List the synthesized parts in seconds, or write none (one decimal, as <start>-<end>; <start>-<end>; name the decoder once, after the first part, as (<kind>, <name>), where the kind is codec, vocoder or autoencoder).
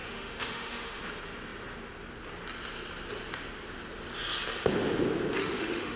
0.0-1.0 (autoencoder, DAC-VAE); 5.4-6.0